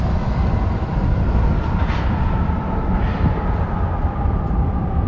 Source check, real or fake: fake